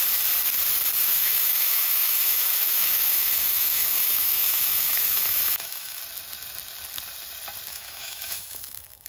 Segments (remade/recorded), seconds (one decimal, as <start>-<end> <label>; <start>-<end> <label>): 0.0-1.0 recorded; 1.0-6.0 remade; 6.0-7.7 recorded; 7.7-9.1 remade